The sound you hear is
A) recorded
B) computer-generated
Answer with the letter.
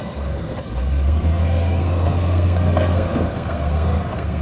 B